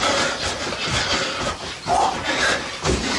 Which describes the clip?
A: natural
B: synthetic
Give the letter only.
A